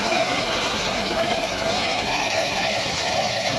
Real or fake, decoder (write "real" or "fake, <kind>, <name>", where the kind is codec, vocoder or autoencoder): fake, codec, SNAC